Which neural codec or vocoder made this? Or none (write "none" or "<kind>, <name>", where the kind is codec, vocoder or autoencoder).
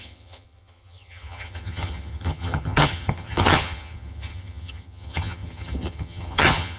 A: vocoder, HiFi-GAN